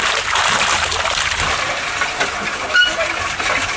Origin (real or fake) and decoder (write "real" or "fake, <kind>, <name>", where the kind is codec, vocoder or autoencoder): real